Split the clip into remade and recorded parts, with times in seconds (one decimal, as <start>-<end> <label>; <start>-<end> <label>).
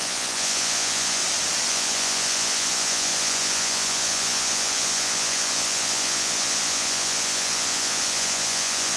0.0-1.2 remade; 1.2-1.7 recorded; 1.7-9.0 remade